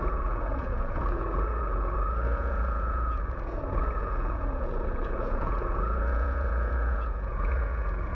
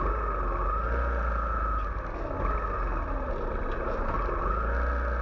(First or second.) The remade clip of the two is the first